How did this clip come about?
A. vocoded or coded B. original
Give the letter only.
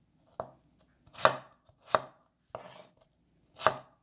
B